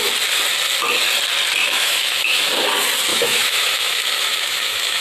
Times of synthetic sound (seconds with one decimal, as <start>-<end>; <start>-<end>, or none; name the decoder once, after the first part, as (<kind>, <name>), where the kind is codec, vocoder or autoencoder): 1.6-2.5 (autoencoder, DAC-VAE); 3.1-5.0